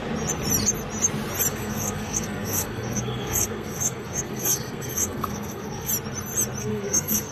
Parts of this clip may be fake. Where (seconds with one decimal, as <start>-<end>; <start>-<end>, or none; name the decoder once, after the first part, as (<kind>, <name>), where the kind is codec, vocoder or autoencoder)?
1.5-5.9 (codec, SNAC); 6.6-7.3